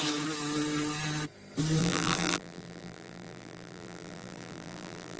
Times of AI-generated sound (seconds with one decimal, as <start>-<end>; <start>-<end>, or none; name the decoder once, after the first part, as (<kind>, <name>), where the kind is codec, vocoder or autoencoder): 1.8-5.2 (vocoder, BigVGAN v2)

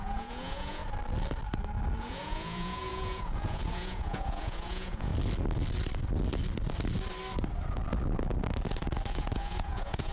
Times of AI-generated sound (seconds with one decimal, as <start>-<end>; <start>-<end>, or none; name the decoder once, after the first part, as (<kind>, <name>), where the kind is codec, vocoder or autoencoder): 0.0-0.8 (vocoder, Vocos); 2.0-5.1; 9.1-10.1

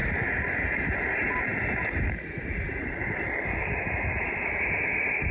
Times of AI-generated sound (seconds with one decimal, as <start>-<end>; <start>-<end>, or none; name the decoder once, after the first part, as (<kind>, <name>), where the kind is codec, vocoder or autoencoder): none

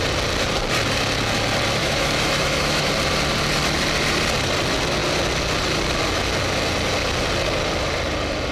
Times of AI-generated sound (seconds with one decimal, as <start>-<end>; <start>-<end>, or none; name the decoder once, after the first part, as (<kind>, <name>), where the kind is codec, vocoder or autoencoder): 1.8-2.9 (autoencoder, DAC-VAE)

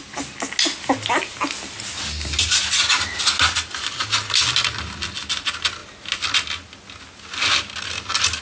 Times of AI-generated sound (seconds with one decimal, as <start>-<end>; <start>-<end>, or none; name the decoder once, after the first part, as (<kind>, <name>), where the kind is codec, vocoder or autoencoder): none

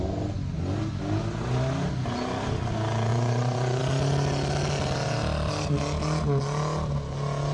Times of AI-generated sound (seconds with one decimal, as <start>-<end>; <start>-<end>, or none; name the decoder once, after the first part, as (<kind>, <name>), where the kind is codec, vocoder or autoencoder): 3.1-3.8 (vocoder, BigVGAN v2)

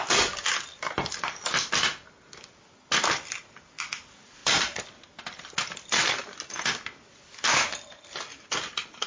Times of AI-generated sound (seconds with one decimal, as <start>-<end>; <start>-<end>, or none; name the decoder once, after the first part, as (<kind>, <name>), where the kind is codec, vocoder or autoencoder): none

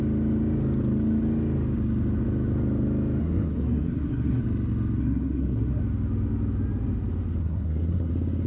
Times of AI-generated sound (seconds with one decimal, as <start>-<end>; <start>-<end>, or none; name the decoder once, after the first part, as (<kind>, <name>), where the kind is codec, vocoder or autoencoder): 3.2-4.4 (codec, SNAC); 5.0-5.8; 7.4-8.1